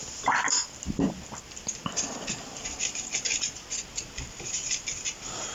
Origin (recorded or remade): remade